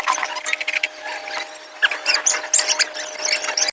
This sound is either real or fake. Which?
real